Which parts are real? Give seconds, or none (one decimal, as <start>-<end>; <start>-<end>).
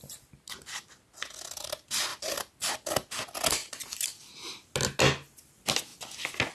0.0-2.1; 3.2-3.6; 4.3-6.5